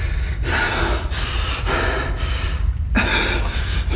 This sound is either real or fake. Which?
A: fake